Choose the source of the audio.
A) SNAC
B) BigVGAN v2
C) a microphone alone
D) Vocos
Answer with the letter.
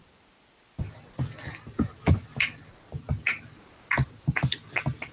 C